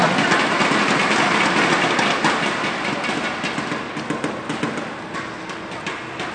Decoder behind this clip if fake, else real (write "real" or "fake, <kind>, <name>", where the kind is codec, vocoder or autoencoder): real